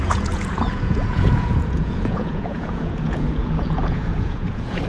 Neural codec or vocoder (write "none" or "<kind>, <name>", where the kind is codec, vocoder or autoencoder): vocoder, Vocos